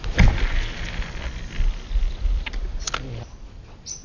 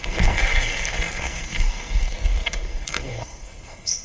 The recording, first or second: first